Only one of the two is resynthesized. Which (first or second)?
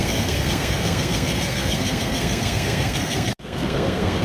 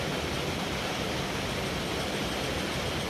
first